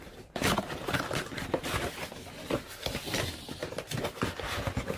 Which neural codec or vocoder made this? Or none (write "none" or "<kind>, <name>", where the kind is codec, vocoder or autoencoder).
none